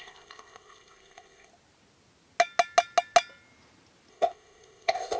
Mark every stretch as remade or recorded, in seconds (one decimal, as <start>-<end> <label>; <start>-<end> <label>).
0.0-1.5 remade; 1.5-4.1 recorded; 4.1-5.2 remade